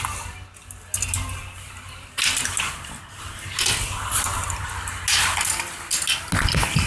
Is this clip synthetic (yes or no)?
no